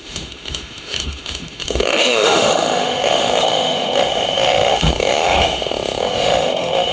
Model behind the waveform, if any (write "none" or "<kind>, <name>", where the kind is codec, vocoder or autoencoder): autoencoder, DAC-VAE